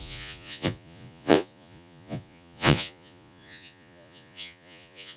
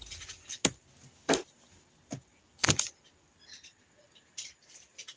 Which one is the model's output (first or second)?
first